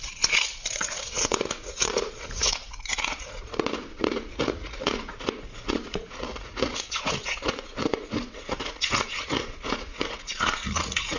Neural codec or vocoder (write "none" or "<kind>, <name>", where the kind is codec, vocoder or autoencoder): vocoder, Vocos